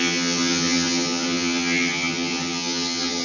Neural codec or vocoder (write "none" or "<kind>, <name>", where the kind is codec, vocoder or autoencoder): vocoder, HiFi-GAN